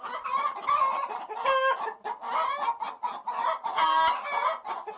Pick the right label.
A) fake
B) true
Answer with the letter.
B